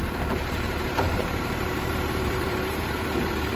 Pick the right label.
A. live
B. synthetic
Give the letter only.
B